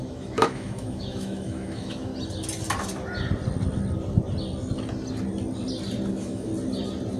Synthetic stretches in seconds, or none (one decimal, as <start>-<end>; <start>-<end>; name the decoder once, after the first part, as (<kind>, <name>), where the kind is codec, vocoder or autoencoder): 0.0-2.1 (autoencoder, DAC-VAE); 6.1-6.5

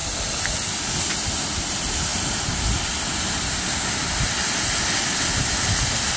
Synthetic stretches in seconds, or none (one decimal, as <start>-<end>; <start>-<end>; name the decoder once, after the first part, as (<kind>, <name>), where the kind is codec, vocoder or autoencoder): none

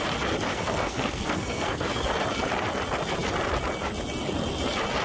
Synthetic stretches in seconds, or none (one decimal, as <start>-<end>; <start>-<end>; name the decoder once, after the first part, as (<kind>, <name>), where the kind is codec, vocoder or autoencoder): 0.5-2.1 (codec, SNAC)

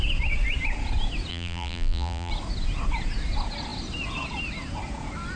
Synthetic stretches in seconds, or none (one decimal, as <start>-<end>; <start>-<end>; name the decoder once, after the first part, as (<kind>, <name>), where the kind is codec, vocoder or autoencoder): 1.3-2.3 (vocoder, BigVGAN v2)

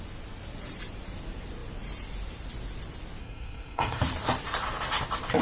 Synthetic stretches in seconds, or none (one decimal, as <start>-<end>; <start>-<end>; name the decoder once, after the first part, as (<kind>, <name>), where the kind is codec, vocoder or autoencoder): 3.2-4.0 (codec, SNAC)

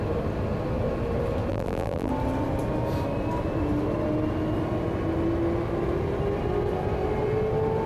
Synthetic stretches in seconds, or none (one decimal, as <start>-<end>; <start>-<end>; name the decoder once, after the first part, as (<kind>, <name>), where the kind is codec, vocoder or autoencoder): 1.5-2.1 (vocoder, BigVGAN v2)

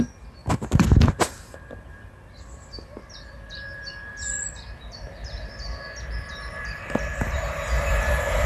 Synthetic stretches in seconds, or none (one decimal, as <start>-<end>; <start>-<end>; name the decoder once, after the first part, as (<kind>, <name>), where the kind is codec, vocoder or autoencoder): 0.4-5.5 (vocoder, BigVGAN v2); 6.3-8.5